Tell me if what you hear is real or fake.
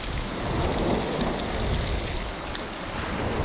real